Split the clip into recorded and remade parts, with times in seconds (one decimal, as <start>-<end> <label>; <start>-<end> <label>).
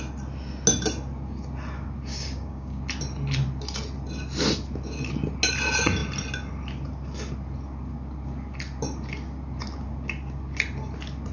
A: 0.0-2.1 recorded; 2.1-2.8 remade; 2.8-11.3 recorded